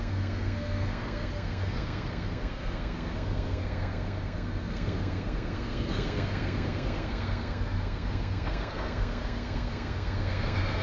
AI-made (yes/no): yes